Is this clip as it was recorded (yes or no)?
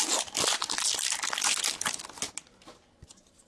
yes